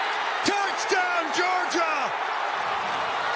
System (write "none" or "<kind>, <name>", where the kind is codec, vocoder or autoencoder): none